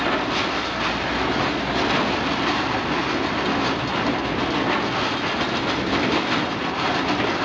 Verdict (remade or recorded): recorded